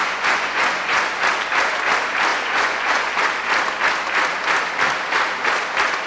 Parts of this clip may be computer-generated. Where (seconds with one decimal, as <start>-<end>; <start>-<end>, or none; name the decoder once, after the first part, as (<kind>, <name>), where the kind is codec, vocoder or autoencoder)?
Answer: 0.0-1.1 (vocoder, Vocos); 2.3-3.1